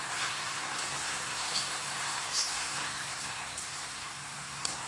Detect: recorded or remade remade